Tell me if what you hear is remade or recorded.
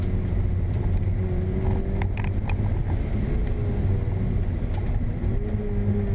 recorded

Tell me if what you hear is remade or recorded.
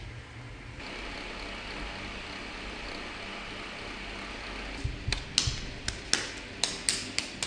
recorded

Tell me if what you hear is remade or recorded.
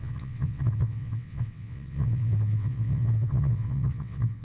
remade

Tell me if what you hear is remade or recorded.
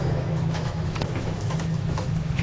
remade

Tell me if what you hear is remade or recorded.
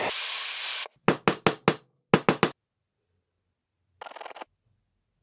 recorded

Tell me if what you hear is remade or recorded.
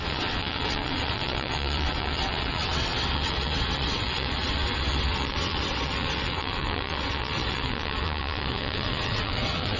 remade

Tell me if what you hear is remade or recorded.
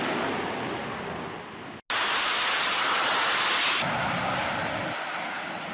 recorded